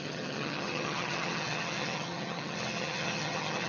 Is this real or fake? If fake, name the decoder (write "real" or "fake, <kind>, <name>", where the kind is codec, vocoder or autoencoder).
fake, vocoder, HiFi-GAN